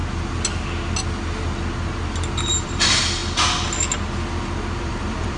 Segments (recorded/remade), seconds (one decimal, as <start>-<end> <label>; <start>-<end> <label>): 0.0-2.5 recorded; 2.5-3.2 remade; 3.2-4.8 recorded; 4.8-5.4 remade